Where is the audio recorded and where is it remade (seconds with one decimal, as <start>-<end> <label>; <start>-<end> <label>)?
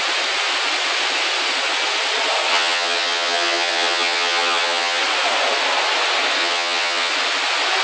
0.0-2.5 recorded; 2.5-5.0 remade; 5.0-6.4 recorded; 6.4-7.1 remade; 7.1-7.8 recorded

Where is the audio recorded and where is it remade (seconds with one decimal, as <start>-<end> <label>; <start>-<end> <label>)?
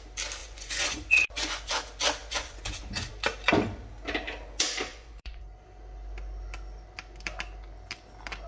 0.0-0.4 recorded; 0.4-1.7 remade; 1.7-2.2 recorded; 2.2-3.1 remade; 3.1-4.9 recorded; 4.9-5.4 remade; 5.4-8.5 recorded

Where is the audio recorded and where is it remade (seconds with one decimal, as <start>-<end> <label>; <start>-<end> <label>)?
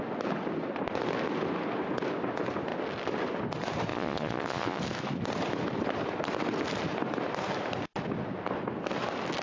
0.0-3.9 recorded; 3.9-4.8 remade; 4.8-9.4 recorded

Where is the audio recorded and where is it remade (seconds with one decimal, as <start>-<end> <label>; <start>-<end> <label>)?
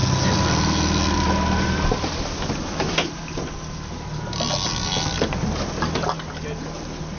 0.0-7.2 recorded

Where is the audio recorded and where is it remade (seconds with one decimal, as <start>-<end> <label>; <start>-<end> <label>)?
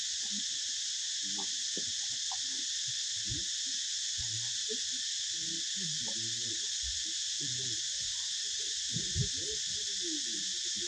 0.0-5.4 remade; 5.4-6.5 recorded; 6.5-10.9 remade